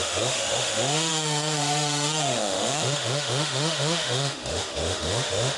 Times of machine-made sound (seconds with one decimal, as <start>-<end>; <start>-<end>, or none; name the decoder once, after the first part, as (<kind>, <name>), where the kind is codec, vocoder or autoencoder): 0.0-5.6 (autoencoder, DAC-VAE)